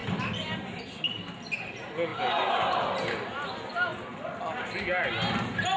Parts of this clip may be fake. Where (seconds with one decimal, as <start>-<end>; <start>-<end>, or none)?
none